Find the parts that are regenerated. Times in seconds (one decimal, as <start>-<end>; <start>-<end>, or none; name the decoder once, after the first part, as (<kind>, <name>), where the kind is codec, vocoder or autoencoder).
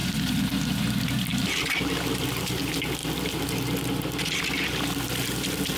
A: 1.3-2.6 (vocoder, BigVGAN v2)